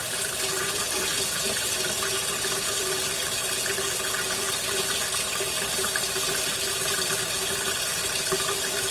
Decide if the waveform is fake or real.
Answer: fake